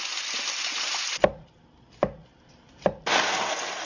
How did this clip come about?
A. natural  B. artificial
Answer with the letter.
A